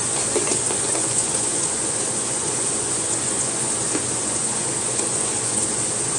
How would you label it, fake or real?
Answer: fake